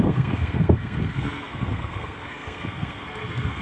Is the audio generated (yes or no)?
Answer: yes